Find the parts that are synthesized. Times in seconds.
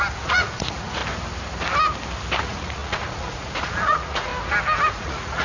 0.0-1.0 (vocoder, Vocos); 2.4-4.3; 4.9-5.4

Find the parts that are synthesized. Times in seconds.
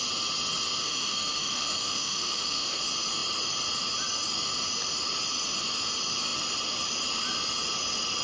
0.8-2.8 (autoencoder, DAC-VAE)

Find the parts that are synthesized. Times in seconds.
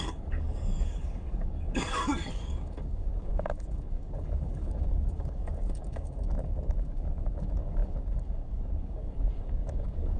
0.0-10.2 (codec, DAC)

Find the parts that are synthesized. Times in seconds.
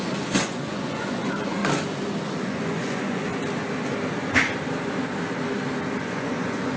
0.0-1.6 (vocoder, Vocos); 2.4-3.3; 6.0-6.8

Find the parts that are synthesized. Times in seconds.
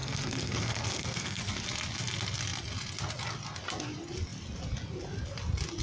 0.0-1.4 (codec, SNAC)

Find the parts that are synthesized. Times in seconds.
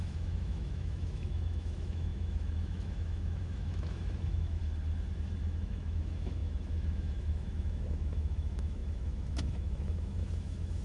0.0-4.6 (autoencoder, DAC-VAE); 5.4-10.8